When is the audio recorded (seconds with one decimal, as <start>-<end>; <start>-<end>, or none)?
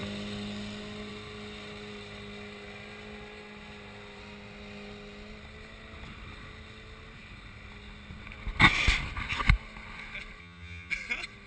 0.0-10.4; 10.9-11.5